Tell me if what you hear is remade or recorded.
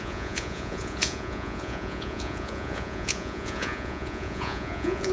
remade